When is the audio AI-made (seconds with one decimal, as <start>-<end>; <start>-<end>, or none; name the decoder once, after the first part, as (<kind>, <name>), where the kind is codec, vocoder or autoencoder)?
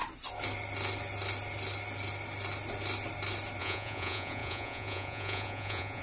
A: 3.6-6.0 (vocoder, Vocos)